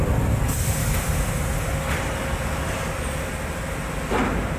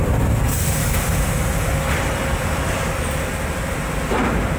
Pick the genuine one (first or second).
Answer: first